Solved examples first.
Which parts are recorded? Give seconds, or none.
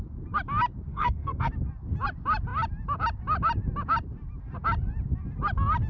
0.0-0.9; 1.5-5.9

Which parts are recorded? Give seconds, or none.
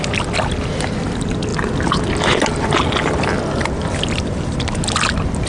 0.0-5.5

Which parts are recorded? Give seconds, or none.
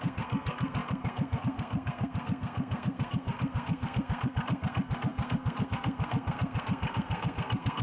none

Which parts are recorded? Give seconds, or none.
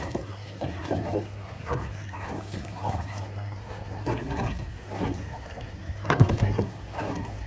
none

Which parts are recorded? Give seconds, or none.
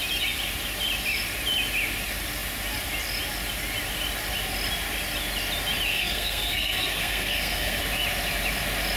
0.0-5.9; 7.8-9.0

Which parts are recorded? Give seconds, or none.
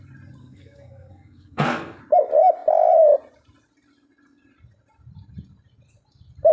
0.0-0.4; 2.0-6.5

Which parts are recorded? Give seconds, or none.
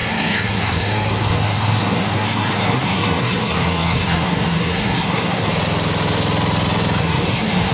5.5-7.0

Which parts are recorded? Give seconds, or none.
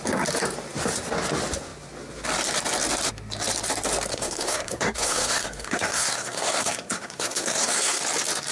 0.0-4.1; 8.0-8.5